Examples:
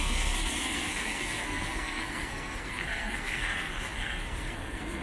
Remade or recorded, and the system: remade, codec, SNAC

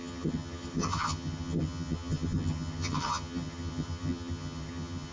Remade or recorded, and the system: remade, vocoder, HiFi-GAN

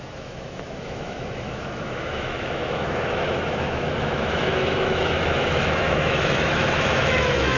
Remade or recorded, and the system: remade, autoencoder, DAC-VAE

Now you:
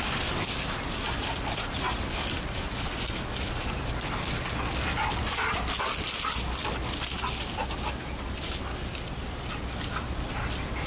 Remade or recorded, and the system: recorded